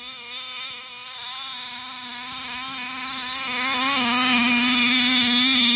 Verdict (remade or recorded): recorded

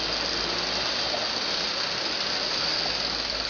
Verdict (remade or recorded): recorded